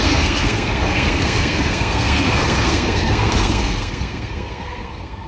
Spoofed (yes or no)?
yes